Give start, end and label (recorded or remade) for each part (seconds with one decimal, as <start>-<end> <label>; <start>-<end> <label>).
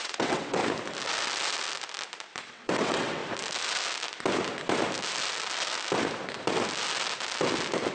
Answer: 0.0-0.6 remade; 0.6-2.5 recorded; 2.5-3.2 remade; 3.2-7.9 recorded